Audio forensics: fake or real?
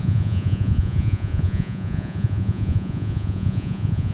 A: fake